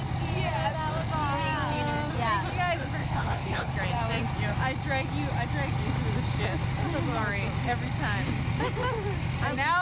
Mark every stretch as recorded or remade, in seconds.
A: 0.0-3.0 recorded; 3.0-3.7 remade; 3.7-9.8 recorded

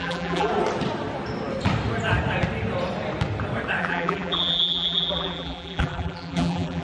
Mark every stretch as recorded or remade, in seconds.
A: 0.0-0.5 remade; 0.5-3.8 recorded; 3.8-6.8 remade

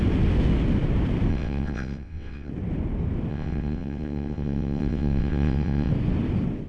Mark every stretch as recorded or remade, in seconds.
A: 0.0-1.3 recorded; 1.3-2.5 remade; 2.5-3.3 recorded; 3.3-5.9 remade; 5.9-6.7 recorded

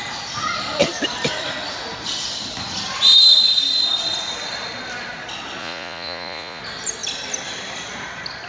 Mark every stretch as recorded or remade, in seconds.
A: 0.0-5.6 recorded; 5.6-6.6 remade; 6.6-8.5 recorded

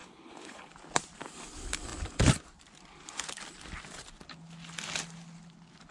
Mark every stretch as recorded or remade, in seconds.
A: 0.0-0.7 remade; 0.7-5.9 recorded

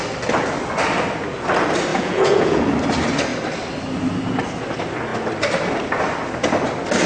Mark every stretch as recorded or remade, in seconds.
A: 0.0-1.9 recorded; 1.9-2.6 remade; 2.6-7.1 recorded